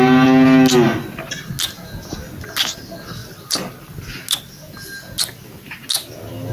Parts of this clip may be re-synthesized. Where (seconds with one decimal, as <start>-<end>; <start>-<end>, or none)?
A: 3.2-3.7